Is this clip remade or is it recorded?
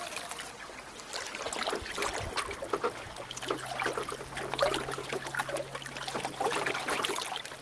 recorded